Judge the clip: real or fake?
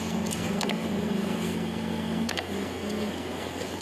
fake